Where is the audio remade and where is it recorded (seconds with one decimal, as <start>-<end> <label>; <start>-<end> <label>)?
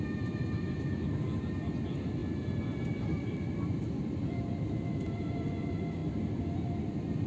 0.0-7.3 recorded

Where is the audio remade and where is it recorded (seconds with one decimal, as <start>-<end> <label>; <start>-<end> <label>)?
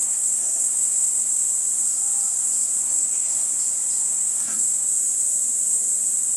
0.0-1.3 remade; 1.3-2.8 recorded; 2.8-3.5 remade; 3.5-4.1 recorded; 4.1-4.9 remade; 4.9-6.4 recorded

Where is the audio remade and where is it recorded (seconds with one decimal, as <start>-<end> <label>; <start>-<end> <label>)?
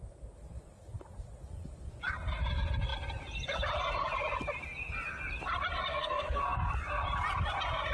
0.0-5.9 recorded; 5.9-6.4 remade; 6.4-7.9 recorded